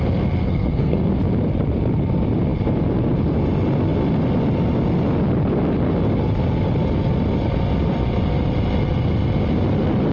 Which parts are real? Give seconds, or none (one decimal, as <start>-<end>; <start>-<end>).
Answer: 0.0-0.4; 1.1-10.1